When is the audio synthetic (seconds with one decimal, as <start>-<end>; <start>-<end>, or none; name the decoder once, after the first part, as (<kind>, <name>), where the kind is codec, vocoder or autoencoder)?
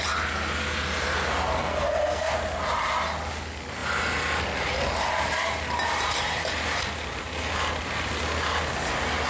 1.6-2.3 (codec, SNAC)